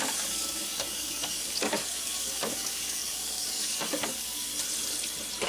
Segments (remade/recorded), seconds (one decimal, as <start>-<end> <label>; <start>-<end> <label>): 0.0-4.5 remade; 4.5-5.5 recorded